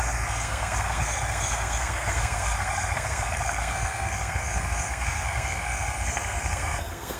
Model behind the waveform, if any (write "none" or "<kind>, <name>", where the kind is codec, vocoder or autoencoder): codec, SNAC